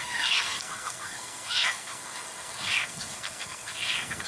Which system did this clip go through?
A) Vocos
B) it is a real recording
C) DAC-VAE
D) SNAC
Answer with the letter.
D